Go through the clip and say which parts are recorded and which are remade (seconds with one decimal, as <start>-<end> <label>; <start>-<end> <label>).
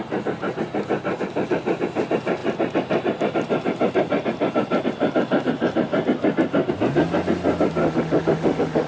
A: 0.0-7.8 recorded; 7.8-8.9 remade